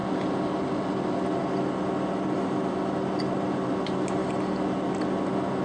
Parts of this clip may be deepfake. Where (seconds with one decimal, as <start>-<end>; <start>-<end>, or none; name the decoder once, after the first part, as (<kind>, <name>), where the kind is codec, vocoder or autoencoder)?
none